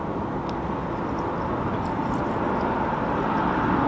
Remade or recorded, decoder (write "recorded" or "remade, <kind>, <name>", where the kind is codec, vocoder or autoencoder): recorded